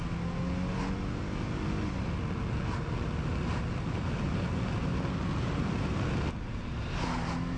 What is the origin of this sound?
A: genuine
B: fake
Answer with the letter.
A